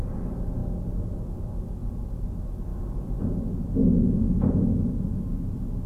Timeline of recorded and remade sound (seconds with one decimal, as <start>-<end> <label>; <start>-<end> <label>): 0.0-2.7 recorded; 2.7-3.3 remade; 3.3-5.9 recorded